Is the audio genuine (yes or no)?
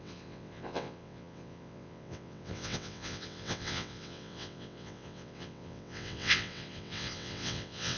no